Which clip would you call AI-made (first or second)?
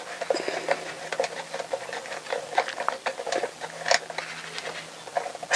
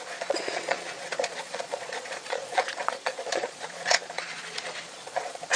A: second